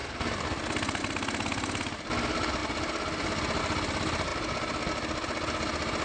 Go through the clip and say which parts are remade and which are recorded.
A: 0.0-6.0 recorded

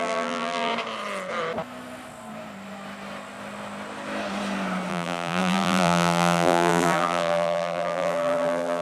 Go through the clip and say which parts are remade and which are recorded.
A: 0.0-0.7 remade; 0.7-4.9 recorded; 4.9-8.8 remade

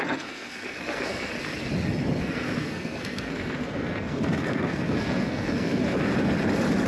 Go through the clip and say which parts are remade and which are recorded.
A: 0.0-1.3 remade; 1.3-2.2 recorded; 2.2-6.1 remade; 6.1-6.9 recorded

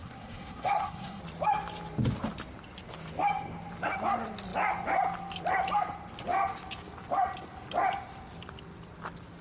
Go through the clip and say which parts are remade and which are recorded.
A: 0.0-1.2 remade; 1.2-9.4 recorded

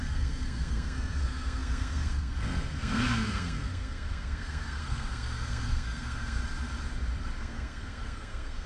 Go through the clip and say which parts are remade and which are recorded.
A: 0.0-6.4 remade; 6.4-7.4 recorded; 7.4-8.7 remade